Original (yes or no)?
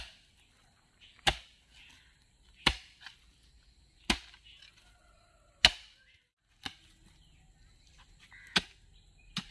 yes